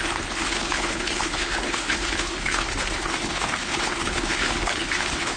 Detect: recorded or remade remade